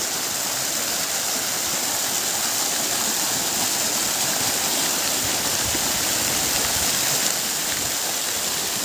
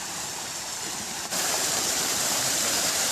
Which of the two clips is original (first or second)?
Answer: first